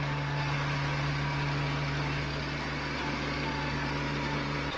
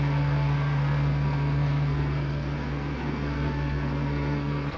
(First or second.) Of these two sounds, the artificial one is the second